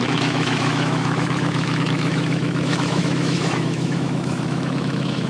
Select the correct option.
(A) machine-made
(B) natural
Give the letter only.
A